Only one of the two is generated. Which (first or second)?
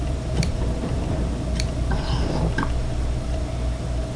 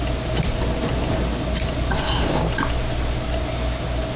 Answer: first